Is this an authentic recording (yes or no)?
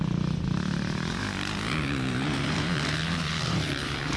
no